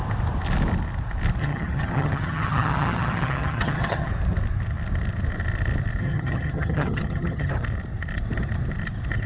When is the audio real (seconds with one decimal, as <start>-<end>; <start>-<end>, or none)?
0.0-1.4; 4.1-6.0; 7.5-9.3